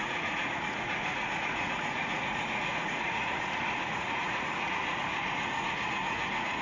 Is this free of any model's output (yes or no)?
no